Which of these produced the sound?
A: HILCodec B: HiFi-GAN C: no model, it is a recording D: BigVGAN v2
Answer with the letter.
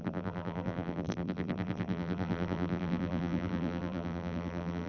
D